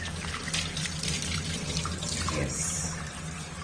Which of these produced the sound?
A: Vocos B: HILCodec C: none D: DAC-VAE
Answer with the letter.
C